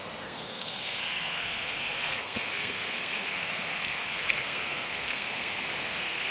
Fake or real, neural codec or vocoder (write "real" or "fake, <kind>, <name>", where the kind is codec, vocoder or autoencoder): fake, codec, SNAC